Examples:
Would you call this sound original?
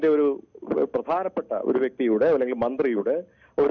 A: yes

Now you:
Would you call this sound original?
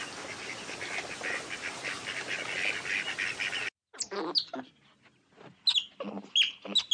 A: yes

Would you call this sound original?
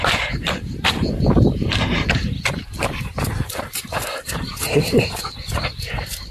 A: no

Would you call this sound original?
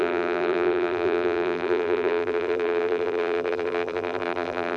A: no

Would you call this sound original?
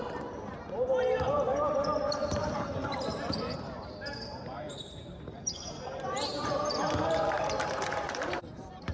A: no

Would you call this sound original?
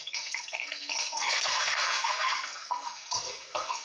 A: no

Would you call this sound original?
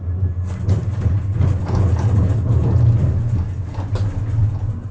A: yes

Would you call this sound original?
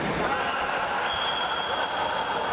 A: yes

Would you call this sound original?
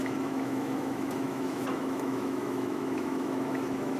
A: no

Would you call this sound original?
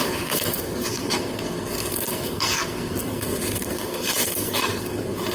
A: no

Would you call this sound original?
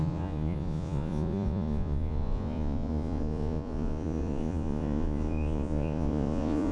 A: no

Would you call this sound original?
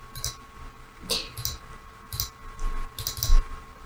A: yes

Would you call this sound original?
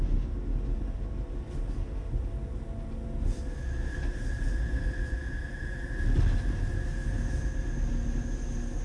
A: yes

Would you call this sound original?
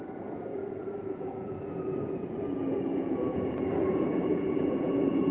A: no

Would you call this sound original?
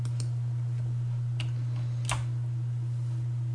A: yes